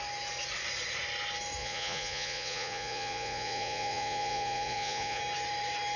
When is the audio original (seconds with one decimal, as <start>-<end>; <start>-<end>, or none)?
0.0-1.6; 5.2-6.0